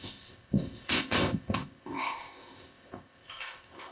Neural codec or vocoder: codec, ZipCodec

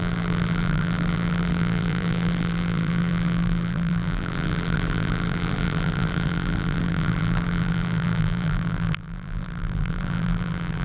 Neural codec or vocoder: vocoder, BigVGAN v2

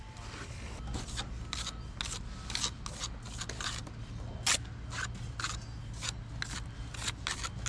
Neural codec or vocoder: none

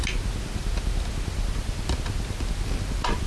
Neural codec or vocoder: none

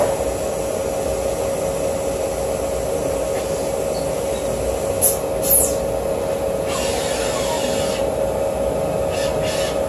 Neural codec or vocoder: none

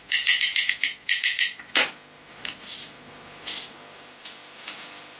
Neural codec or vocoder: none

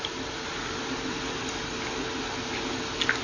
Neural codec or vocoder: none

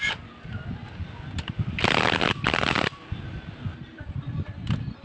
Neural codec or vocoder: none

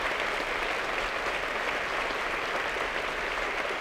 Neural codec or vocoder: none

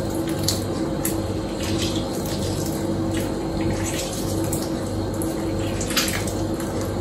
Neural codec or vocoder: none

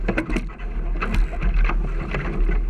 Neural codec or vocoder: none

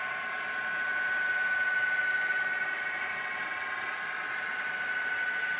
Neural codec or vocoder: none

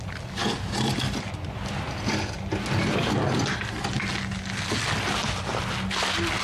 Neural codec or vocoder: none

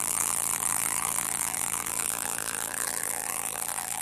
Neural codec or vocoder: vocoder, BigVGAN v2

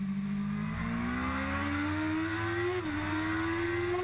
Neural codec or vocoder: none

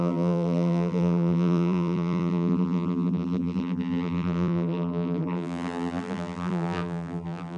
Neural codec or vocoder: vocoder, BigVGAN v2